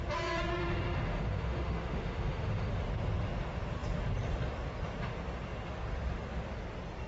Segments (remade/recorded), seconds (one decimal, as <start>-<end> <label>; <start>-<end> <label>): 0.0-0.6 recorded; 0.6-2.7 remade; 2.7-7.1 recorded